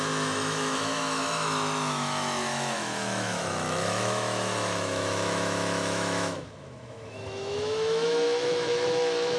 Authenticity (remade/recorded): remade